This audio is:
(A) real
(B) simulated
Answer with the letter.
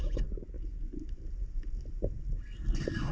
A